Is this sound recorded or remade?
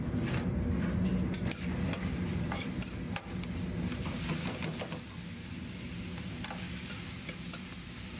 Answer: recorded